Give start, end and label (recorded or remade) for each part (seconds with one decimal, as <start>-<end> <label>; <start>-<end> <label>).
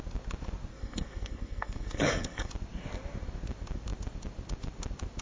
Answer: 0.0-0.7 recorded; 0.7-2.5 remade; 2.5-5.2 recorded